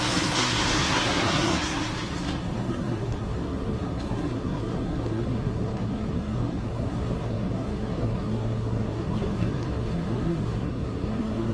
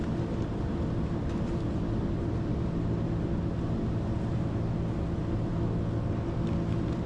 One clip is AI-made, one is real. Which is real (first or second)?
second